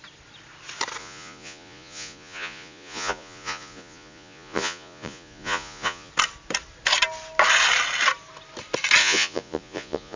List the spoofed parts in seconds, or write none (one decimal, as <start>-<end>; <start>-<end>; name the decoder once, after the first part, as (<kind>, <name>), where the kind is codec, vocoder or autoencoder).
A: 1.0-6.1 (vocoder, Vocos); 9.0-10.2